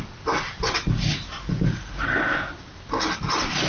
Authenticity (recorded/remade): recorded